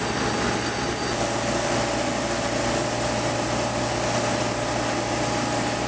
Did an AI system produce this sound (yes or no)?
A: no